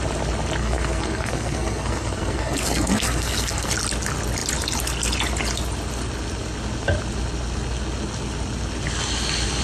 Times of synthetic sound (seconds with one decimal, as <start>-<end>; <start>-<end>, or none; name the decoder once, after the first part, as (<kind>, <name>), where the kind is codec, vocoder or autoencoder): 0.6-3.7 (codec, SNAC)